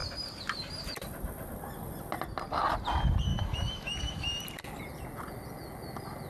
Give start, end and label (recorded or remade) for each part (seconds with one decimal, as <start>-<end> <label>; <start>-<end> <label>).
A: 0.0-3.3 recorded; 3.3-4.4 remade; 4.4-6.3 recorded